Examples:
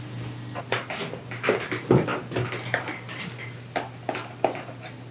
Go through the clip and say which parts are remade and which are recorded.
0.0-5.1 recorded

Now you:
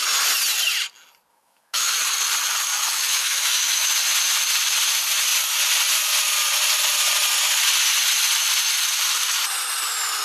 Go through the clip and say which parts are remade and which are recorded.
0.0-1.3 recorded; 1.3-1.9 remade; 1.9-2.7 recorded; 2.7-3.9 remade; 3.9-10.2 recorded

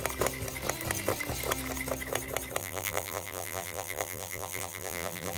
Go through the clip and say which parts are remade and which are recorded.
0.0-2.6 recorded; 2.6-5.4 remade

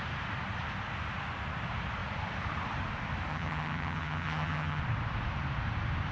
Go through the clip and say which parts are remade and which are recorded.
0.0-3.3 recorded; 3.3-4.8 remade; 4.8-6.1 recorded

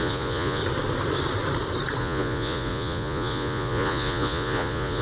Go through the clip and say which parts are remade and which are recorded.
0.0-0.6 remade; 0.6-2.0 recorded; 2.0-5.0 remade